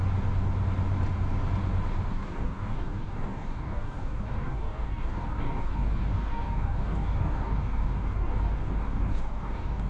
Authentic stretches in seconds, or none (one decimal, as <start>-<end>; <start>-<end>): 0.0-2.1